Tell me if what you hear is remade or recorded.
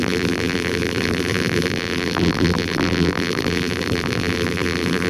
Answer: remade